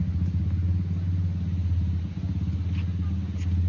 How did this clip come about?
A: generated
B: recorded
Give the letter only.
B